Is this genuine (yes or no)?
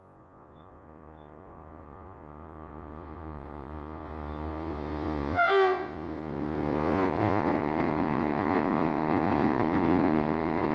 no